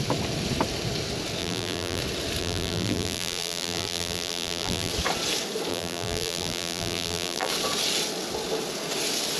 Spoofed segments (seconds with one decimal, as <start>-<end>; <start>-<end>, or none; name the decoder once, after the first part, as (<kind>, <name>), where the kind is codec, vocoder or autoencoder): 1.4-2.0 (vocoder, BigVGAN v2); 2.4-4.9; 5.7-7.5